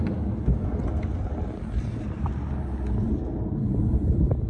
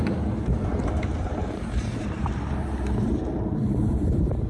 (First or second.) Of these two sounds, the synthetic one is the second